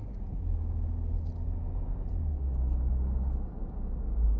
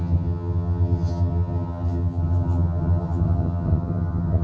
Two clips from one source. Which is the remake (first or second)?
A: second